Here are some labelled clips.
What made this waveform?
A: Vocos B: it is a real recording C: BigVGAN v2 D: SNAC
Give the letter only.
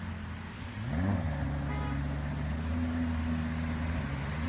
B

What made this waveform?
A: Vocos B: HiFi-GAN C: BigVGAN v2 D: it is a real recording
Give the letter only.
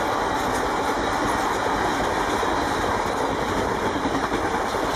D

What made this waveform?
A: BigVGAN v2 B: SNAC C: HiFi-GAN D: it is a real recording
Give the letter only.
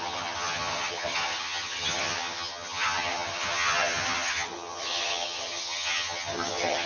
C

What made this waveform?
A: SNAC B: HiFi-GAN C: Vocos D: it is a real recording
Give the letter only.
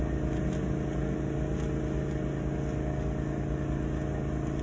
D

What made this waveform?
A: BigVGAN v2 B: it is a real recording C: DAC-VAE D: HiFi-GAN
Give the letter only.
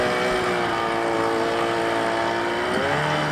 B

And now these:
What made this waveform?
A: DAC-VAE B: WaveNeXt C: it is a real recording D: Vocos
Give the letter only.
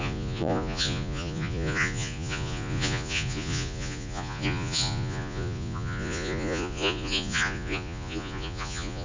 D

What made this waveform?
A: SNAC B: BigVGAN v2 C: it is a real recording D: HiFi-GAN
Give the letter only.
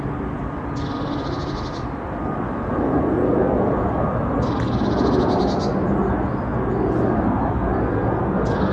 C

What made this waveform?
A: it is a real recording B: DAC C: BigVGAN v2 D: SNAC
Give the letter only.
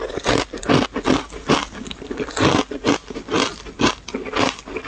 A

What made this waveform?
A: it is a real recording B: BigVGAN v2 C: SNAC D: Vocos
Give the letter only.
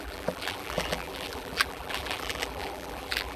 B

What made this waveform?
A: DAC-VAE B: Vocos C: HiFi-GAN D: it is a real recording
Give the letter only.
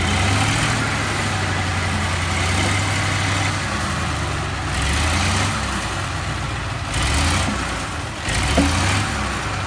D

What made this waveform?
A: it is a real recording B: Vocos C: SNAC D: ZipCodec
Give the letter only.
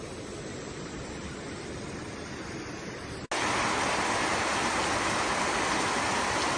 A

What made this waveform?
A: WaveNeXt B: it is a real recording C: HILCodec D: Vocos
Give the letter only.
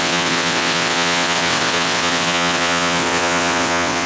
A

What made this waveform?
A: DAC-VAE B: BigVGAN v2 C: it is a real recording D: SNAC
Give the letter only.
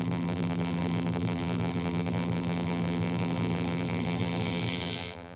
B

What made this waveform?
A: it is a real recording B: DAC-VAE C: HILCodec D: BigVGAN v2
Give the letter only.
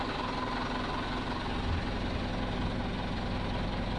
A